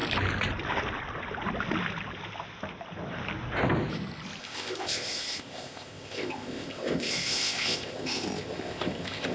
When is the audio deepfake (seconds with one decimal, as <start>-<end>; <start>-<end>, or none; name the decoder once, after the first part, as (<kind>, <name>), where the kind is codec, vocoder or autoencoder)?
4.4-9.3 (codec, ZipCodec)